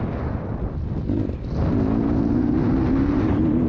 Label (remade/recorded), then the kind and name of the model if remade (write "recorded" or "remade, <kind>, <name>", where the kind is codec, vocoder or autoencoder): recorded